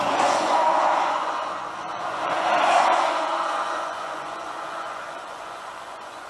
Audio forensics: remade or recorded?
remade